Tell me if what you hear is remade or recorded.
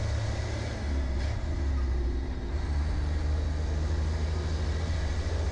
recorded